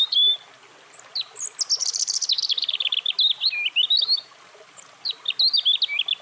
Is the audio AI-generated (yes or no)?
no